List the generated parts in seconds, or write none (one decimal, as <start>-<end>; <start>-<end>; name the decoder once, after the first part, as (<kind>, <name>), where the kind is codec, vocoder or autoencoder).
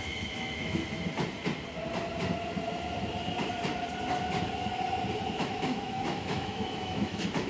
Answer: 0.0-0.8 (autoencoder, DAC-VAE); 5.3-7.5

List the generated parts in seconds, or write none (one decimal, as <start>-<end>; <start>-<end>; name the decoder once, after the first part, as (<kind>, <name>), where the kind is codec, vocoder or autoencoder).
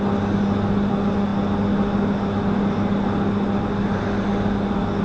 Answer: none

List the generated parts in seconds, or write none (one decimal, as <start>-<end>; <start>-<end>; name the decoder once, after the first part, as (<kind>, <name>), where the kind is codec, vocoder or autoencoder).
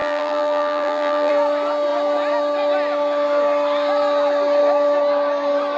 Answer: 0.0-1.3 (vocoder, BigVGAN v2)